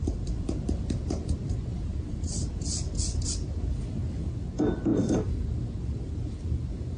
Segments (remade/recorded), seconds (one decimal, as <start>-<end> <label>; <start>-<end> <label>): 0.0-7.0 remade